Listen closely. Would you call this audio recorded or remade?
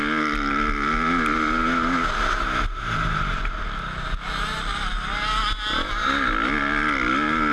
recorded